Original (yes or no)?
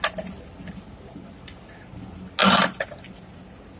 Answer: yes